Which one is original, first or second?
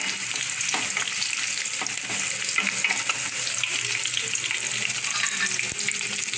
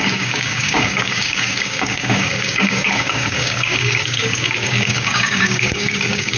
first